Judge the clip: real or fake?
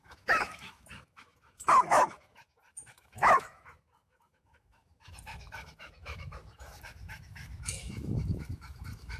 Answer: fake